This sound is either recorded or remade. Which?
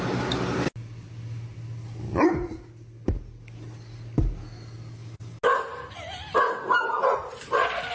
recorded